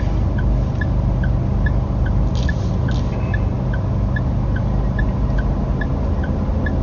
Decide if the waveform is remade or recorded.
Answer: recorded